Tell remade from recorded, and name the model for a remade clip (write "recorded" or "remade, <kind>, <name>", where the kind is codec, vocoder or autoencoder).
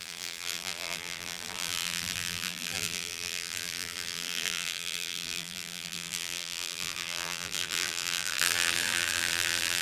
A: remade, vocoder, BigVGAN v2